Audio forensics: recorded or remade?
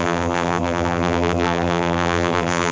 remade